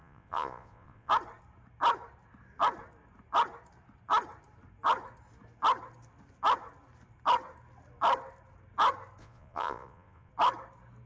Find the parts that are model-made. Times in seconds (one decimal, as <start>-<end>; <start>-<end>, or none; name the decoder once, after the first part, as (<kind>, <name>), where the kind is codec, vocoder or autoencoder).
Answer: 0.0-1.1 (vocoder, Vocos); 9.2-10.3